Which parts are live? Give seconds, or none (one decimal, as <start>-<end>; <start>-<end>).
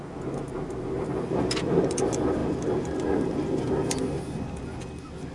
0.0-5.3